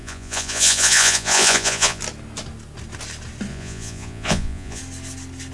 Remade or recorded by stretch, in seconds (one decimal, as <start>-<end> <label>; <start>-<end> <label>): 0.0-2.0 remade; 2.0-3.5 recorded; 3.5-4.8 remade; 4.8-5.5 recorded